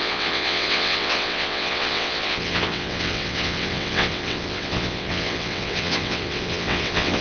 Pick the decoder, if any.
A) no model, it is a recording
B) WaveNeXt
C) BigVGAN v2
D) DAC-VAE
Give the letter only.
B